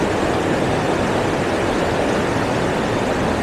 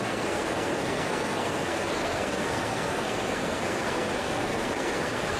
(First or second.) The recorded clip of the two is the first